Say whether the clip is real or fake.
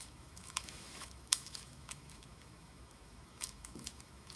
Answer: fake